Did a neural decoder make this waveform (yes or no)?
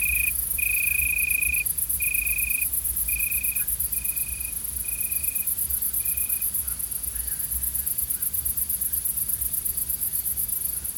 no